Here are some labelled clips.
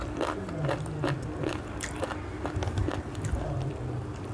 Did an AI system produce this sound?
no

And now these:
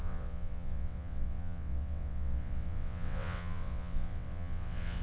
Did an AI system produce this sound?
yes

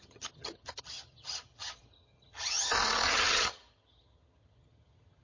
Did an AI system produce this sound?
yes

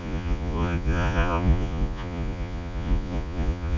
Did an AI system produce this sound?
yes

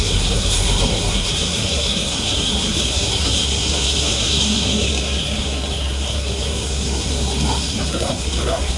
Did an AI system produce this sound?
yes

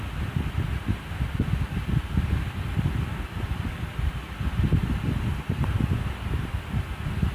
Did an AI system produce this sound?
no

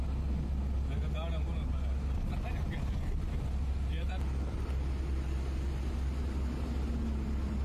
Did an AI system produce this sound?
no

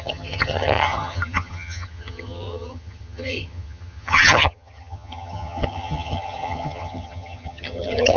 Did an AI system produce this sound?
yes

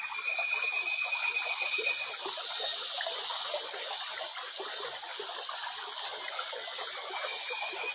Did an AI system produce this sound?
no